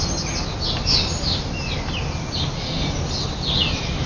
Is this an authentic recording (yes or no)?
yes